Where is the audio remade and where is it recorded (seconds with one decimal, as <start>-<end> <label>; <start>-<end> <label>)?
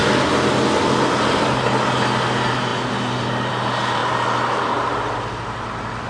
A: 0.0-6.1 recorded